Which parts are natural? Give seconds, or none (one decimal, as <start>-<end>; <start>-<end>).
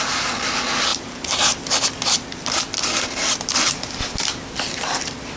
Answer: 0.0-5.4